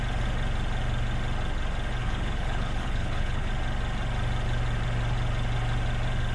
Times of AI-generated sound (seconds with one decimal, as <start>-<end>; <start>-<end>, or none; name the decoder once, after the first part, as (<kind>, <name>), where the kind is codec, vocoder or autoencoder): 2.0-3.5 (codec, HILCodec)